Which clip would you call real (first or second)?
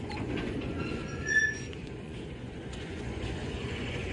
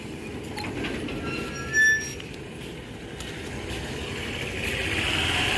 second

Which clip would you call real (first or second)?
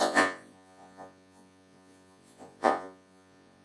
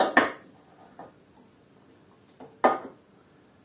second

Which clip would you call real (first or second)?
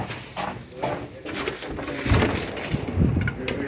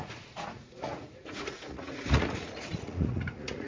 first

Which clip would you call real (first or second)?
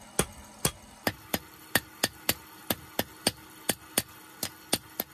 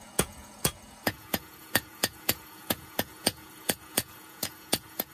first